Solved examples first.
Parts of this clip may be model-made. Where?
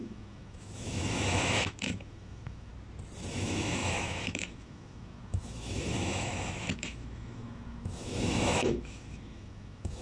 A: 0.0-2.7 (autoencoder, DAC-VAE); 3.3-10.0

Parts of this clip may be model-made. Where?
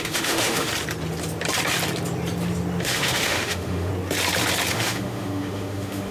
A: 0.0-0.7 (autoencoder, DAC-VAE); 2.8-3.9; 4.7-6.1